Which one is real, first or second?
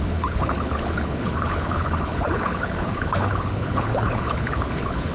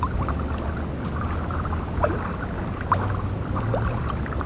second